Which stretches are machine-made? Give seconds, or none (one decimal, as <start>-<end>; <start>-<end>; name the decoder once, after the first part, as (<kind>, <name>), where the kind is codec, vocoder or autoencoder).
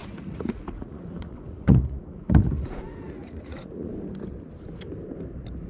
0.0-3.9 (vocoder, Vocos)